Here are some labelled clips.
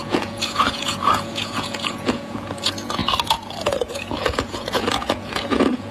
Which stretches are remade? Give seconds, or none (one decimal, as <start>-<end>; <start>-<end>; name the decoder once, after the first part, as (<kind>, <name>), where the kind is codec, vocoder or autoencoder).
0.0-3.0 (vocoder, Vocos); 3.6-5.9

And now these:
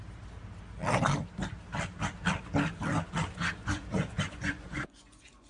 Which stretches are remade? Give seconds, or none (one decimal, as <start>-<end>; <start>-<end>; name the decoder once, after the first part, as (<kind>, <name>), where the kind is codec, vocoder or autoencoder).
3.3-5.5 (vocoder, Vocos)

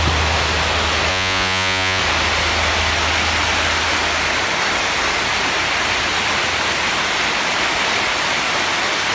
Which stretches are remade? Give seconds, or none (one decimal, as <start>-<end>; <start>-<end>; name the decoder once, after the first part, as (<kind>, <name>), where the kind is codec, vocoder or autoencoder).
1.1-2.0 (vocoder, Vocos)

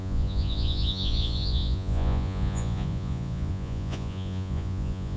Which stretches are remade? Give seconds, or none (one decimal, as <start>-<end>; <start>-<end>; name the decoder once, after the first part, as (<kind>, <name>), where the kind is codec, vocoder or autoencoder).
0.0-5.2 (vocoder, Vocos)